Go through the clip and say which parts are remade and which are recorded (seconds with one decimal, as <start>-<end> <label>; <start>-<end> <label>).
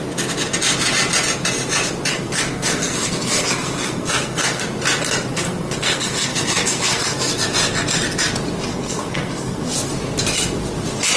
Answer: 0.0-2.1 recorded; 2.1-4.6 remade; 4.6-5.3 recorded; 5.3-7.3 remade; 7.3-8.7 recorded; 8.7-9.7 remade; 9.7-11.2 recorded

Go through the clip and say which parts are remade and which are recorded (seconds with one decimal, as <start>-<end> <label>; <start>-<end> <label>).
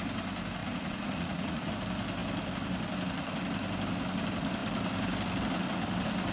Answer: 0.0-0.6 recorded; 0.6-1.7 remade; 1.7-6.3 recorded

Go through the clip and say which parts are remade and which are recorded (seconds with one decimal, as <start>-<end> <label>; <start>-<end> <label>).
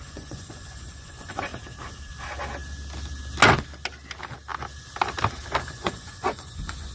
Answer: 0.0-1.5 remade; 1.5-5.6 recorded; 5.6-6.9 remade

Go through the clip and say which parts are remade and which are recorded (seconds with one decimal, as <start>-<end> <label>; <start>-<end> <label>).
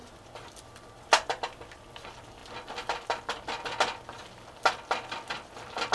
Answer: 0.0-5.9 recorded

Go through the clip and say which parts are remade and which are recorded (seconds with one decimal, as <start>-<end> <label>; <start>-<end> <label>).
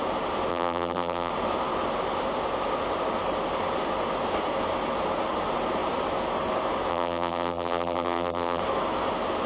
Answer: 0.0-0.5 recorded; 0.5-1.3 remade; 1.3-6.9 recorded; 6.9-8.6 remade; 8.6-9.5 recorded